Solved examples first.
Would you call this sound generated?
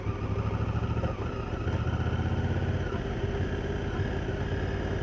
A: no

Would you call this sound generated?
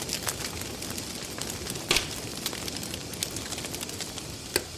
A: no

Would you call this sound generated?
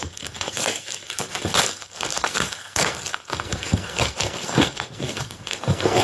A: yes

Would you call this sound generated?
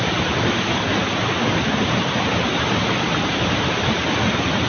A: no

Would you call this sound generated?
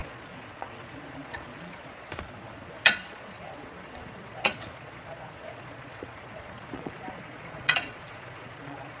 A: yes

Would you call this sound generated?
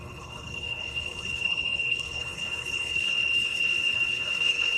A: yes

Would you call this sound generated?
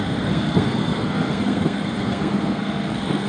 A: yes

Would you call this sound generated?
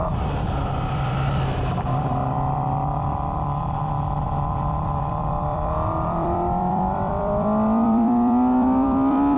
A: yes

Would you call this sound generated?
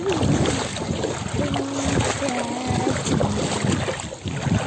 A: no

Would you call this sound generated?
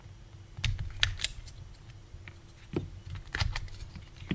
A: no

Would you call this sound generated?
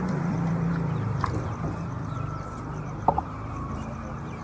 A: yes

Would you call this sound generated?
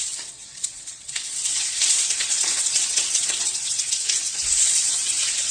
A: yes